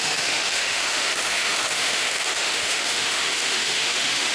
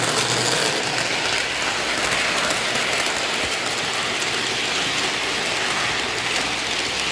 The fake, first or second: first